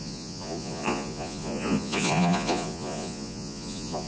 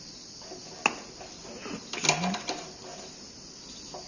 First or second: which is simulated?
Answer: first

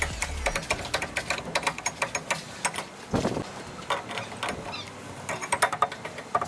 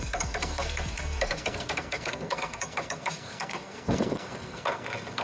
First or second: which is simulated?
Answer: second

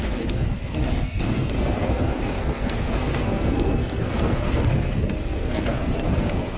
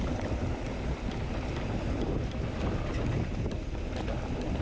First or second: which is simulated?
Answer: first